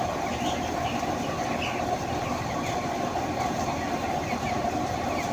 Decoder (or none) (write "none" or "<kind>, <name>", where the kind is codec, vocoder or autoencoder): none